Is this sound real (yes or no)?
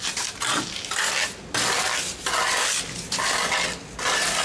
yes